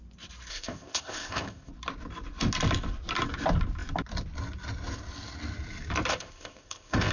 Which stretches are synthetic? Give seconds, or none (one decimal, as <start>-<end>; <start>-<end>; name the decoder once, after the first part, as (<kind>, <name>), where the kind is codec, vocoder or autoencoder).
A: 0.5-1.7 (codec, ZipCodec); 6.1-7.1